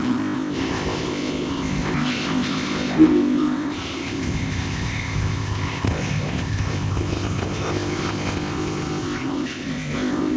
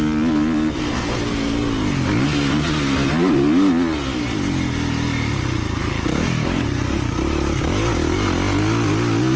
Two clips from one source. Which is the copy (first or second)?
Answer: first